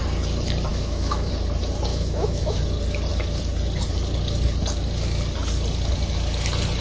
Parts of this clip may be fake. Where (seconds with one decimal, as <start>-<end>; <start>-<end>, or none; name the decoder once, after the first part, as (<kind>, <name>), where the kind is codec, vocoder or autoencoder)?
0.7-1.3 (autoencoder, DAC-VAE); 1.9-2.6